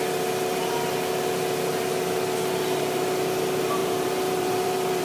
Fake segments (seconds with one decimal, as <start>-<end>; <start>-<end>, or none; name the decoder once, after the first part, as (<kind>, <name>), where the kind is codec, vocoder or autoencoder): 3.8-5.0 (vocoder, BigVGAN v2)